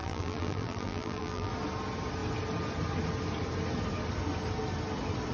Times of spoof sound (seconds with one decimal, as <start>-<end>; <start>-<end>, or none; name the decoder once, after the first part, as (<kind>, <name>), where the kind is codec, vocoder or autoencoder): 0.0-1.5 (vocoder, BigVGAN v2)